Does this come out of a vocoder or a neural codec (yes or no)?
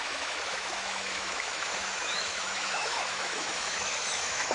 yes